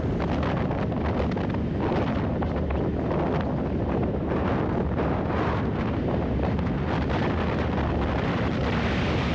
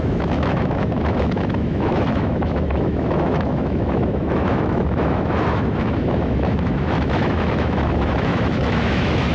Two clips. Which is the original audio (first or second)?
first